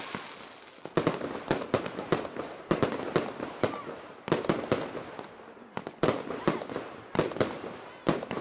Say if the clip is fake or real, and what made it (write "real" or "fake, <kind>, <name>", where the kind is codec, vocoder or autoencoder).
real